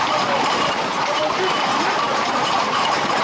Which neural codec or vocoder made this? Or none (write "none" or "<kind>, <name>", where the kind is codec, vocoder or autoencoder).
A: vocoder, BigVGAN v2